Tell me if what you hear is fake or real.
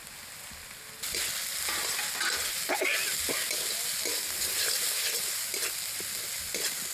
real